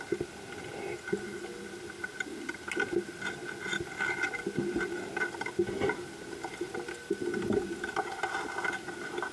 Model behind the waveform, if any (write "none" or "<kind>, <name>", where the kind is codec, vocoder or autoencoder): none